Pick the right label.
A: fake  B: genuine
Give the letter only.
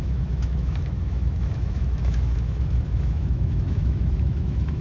A